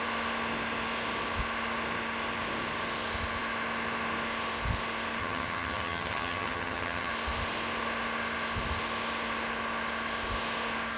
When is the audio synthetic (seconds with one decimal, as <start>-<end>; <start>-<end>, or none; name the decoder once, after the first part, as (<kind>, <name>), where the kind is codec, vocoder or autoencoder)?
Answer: 5.2-7.1 (vocoder, HiFi-GAN)